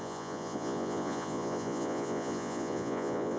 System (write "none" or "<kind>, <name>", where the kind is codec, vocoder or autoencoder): vocoder, Vocos